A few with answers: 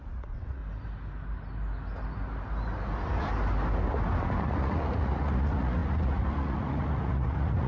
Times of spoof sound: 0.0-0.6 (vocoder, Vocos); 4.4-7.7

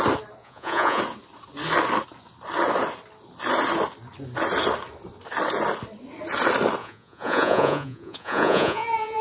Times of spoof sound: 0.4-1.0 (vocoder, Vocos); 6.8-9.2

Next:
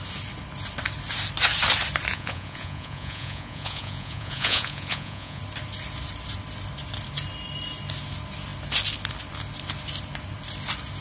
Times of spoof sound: 2.1-5.4 (vocoder, Vocos)

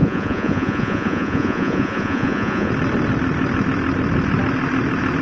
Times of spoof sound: 0.0-2.7 (vocoder, Vocos)

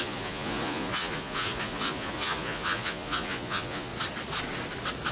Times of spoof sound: 0.0-3.9 (vocoder, Vocos)

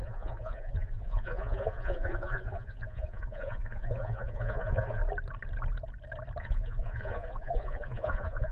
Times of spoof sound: 0.0-5.0 (vocoder, Vocos); 6.4-8.5

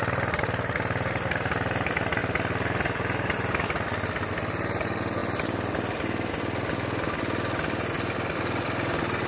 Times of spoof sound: none